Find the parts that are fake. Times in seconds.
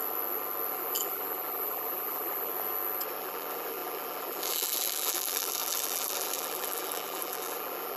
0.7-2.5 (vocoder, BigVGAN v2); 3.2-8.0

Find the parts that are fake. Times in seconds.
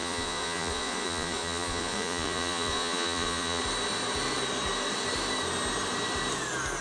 0.0-3.6 (vocoder, Vocos)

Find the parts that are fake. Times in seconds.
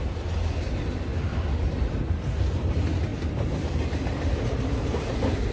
none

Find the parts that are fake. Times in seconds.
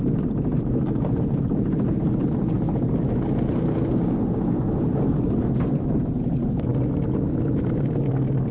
none